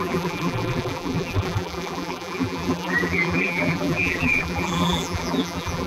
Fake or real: fake